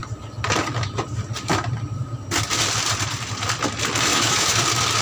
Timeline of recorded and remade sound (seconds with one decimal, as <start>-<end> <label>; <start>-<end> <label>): 0.0-4.1 recorded; 4.1-4.6 remade; 4.6-5.0 recorded